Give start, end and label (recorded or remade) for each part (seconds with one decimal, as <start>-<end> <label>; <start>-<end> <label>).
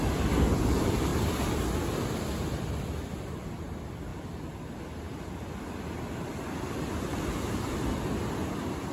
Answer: 0.0-1.1 recorded; 1.1-3.6 remade; 3.6-4.1 recorded; 4.1-4.8 remade; 4.8-8.9 recorded